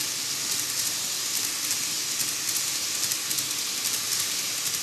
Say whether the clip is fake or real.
real